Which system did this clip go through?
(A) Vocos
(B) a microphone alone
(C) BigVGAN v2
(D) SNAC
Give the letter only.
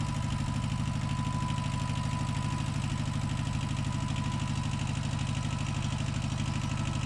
B